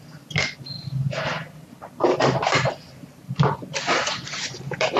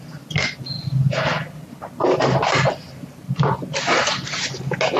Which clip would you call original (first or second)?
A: second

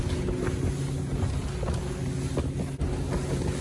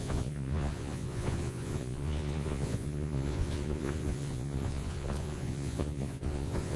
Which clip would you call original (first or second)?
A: first